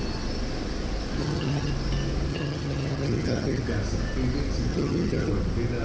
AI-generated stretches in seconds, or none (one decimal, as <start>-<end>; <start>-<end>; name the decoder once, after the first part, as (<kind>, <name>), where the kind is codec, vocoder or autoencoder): 1.2-1.7 (vocoder, HiFi-GAN); 2.3-3.6; 4.7-5.3